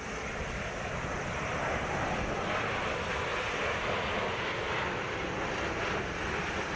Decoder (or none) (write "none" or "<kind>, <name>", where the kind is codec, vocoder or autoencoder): none